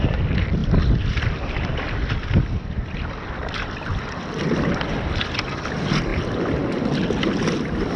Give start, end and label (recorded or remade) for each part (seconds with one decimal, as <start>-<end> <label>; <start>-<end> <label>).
0.0-8.0 recorded